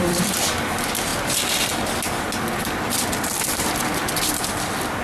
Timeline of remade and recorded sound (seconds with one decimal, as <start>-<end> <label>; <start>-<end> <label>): 0.0-1.1 remade; 1.1-2.9 recorded; 2.9-5.0 remade